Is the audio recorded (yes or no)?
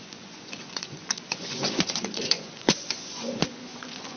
no